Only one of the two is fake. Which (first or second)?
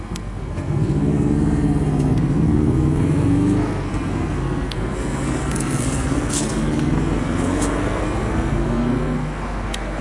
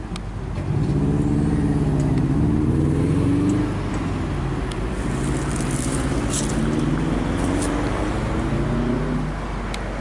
first